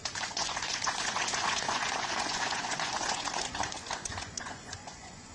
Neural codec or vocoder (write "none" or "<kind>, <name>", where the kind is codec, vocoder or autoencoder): vocoder, Vocos